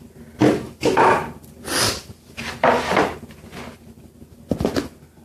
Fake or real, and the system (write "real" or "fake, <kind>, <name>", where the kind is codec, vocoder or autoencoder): fake, vocoder, BigVGAN v2